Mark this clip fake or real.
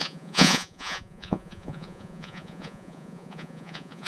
fake